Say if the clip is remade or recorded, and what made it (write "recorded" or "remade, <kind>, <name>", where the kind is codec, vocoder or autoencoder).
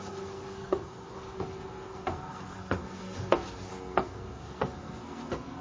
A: remade, codec, SNAC